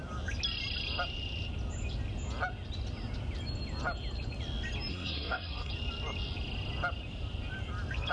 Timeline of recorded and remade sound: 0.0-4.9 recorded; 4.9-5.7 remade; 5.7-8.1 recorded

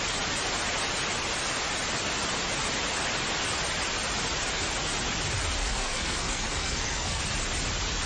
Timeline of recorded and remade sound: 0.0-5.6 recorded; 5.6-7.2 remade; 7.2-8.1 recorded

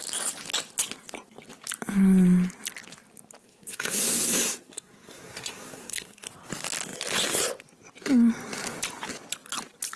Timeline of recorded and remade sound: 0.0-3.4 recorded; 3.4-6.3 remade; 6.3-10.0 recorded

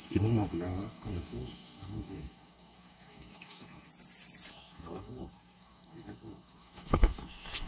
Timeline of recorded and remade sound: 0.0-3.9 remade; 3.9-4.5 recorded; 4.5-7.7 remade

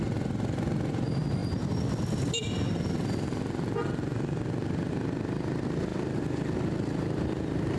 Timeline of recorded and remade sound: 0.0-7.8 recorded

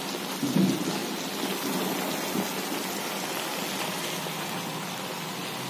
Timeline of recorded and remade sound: 0.0-5.7 recorded

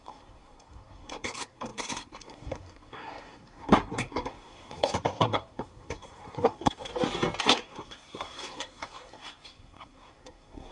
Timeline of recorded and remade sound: 0.0-6.9 remade; 6.9-7.4 recorded; 7.4-10.7 remade